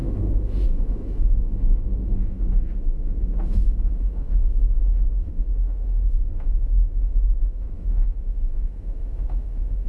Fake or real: fake